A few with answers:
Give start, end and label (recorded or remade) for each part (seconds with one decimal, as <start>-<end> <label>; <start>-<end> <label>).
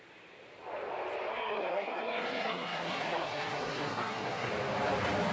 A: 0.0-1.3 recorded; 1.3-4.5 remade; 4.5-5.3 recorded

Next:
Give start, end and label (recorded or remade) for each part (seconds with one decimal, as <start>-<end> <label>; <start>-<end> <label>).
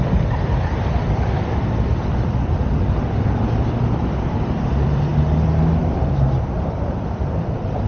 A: 0.0-5.1 remade; 5.1-5.8 recorded; 5.8-7.9 remade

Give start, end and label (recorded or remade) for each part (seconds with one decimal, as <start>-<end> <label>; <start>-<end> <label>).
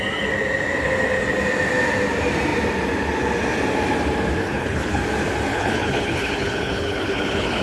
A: 0.0-4.4 recorded; 4.4-5.0 remade; 5.0-5.5 recorded; 5.5-7.6 remade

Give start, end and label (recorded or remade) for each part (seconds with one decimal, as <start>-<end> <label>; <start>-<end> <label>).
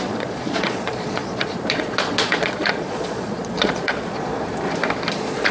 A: 0.0-4.3 remade; 4.3-5.1 recorded; 5.1-5.5 remade